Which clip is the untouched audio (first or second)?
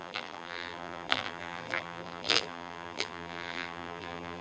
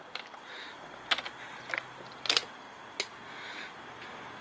second